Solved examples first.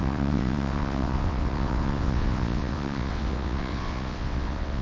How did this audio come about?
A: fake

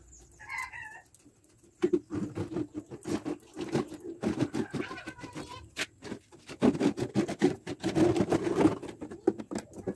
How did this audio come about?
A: real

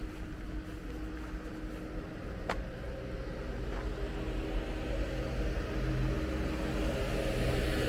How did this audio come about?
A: real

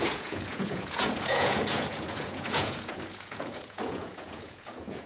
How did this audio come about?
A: fake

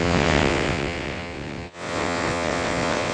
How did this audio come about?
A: fake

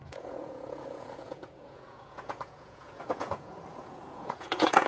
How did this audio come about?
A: fake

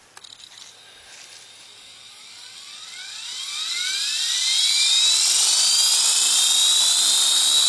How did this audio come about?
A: real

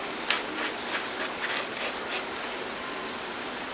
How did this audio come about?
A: real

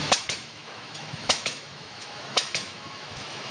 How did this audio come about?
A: fake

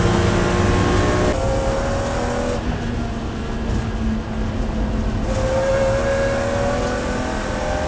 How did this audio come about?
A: real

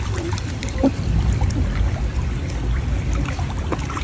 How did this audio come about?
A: fake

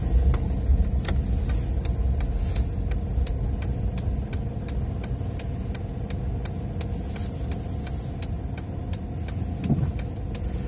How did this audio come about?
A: real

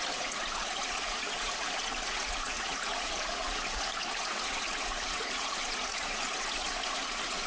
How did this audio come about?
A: fake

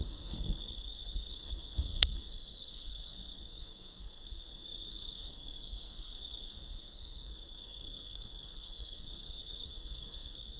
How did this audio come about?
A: fake